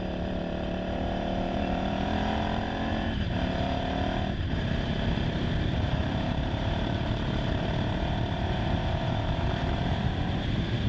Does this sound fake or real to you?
fake